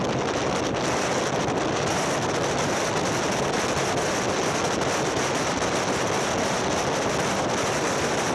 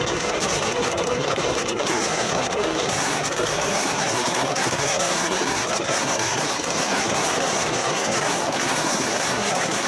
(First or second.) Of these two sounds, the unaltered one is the first